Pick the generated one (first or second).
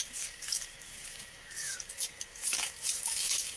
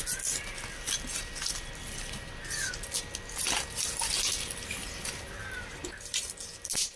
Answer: first